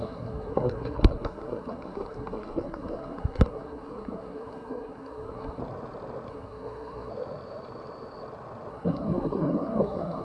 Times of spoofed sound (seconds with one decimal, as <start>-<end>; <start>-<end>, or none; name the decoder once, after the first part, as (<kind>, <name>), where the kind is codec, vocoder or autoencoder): 0.0-5.6 (codec, SNAC); 6.3-7.1; 8.7-10.2